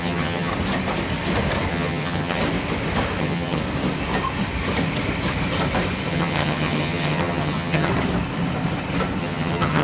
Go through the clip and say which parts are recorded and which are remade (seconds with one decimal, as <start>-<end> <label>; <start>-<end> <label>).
0.0-0.5 remade; 0.5-1.7 recorded; 1.7-2.4 remade; 2.4-3.2 recorded; 3.2-3.6 remade; 3.6-6.1 recorded; 6.1-7.9 remade; 7.9-9.2 recorded; 9.2-9.8 remade